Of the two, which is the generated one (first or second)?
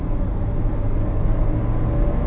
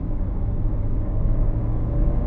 second